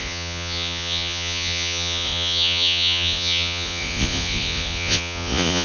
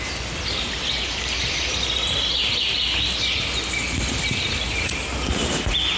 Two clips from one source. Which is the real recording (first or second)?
second